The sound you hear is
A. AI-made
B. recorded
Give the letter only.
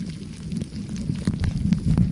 B